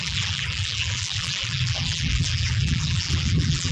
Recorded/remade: remade